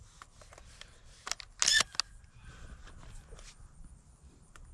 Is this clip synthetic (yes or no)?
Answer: no